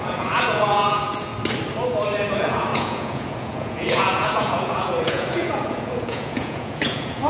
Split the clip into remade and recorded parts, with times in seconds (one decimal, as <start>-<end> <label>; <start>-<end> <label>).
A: 0.0-1.3 remade; 1.3-2.3 recorded; 2.3-7.3 remade

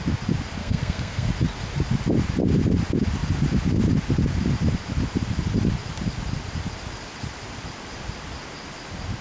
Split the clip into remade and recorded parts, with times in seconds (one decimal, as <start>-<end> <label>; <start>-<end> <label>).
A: 0.0-0.6 recorded; 0.6-1.3 remade; 1.3-9.2 recorded